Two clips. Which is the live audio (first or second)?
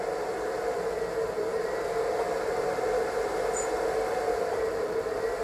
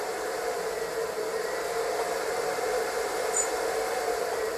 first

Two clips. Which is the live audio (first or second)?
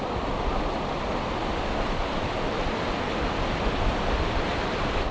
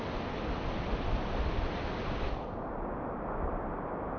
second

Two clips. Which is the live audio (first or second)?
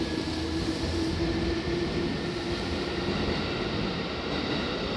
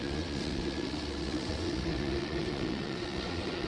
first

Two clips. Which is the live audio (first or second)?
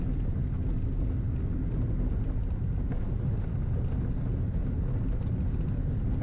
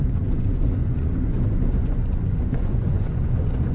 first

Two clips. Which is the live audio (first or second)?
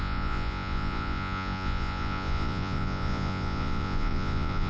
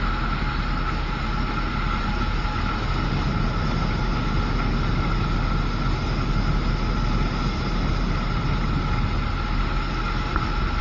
second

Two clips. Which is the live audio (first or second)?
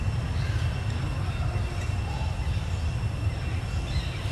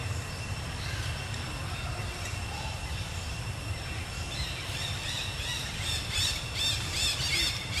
first